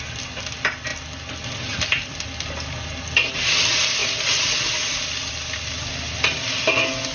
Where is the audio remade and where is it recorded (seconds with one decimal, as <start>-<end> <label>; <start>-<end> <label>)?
0.0-4.0 recorded; 4.0-5.3 remade; 5.3-7.1 recorded